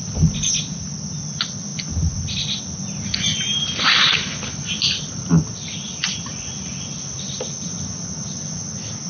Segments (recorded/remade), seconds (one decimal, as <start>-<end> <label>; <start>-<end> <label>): 0.0-9.1 recorded